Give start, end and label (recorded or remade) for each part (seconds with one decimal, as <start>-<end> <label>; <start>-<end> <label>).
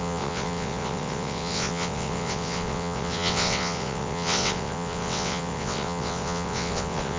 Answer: 0.0-7.2 remade